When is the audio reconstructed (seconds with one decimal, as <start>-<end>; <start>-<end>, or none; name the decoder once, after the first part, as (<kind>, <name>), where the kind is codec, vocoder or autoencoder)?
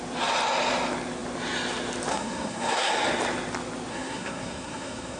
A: 2.1-2.9 (codec, SNAC); 3.9-5.2